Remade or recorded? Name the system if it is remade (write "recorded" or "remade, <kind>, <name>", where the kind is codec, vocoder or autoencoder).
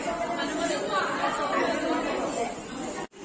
remade, vocoder, Vocos